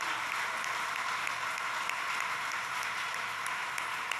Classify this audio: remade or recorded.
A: recorded